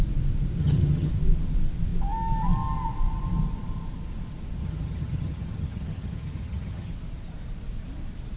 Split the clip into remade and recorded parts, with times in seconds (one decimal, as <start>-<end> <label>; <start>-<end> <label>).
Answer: 0.0-0.6 recorded; 0.6-1.1 remade; 1.1-4.6 recorded; 4.6-6.9 remade; 6.9-8.4 recorded